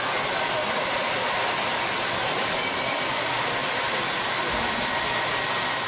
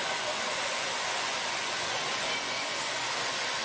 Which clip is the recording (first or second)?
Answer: first